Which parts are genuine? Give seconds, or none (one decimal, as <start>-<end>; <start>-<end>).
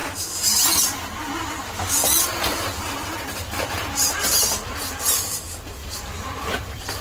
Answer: 0.0-5.8